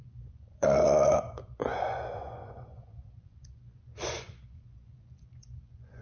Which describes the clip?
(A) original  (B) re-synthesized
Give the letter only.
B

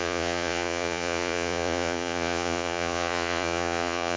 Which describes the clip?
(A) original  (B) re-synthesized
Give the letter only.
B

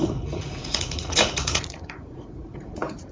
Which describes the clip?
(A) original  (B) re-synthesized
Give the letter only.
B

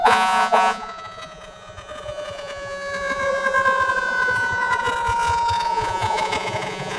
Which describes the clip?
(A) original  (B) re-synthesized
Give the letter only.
B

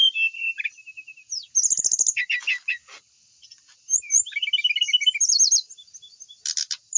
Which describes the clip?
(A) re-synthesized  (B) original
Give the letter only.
B